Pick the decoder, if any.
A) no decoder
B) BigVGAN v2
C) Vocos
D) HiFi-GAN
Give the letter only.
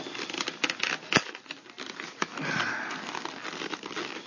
A